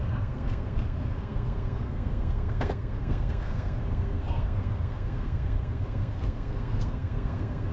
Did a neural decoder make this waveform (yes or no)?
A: yes